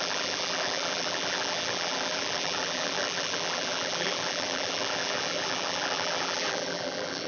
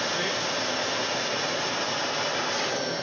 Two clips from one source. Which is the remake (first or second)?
first